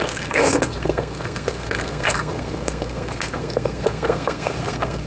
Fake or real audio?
fake